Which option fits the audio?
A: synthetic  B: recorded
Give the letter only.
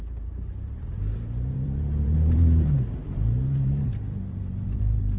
A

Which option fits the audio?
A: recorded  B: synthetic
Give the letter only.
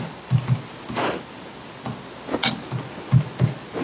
A